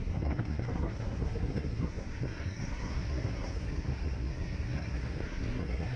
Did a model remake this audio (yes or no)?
yes